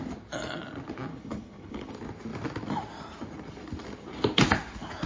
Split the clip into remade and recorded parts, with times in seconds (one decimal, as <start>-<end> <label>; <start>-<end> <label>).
0.0-1.1 recorded; 1.1-1.9 remade; 1.9-5.1 recorded